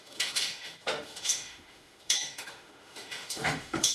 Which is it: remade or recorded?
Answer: remade